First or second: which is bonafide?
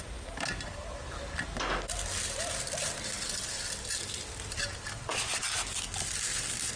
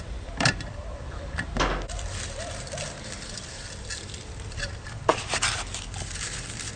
first